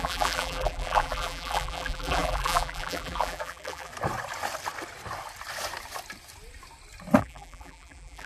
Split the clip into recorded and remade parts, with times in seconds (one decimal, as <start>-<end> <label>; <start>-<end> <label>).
0.0-3.9 remade; 3.9-7.2 recorded; 7.2-8.3 remade